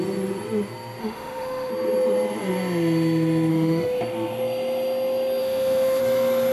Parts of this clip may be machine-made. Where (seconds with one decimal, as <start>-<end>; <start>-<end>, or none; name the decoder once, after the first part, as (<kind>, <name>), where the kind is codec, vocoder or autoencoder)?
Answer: 1.0-1.7 (autoencoder, DAC-VAE); 3.5-4.0; 5.4-6.0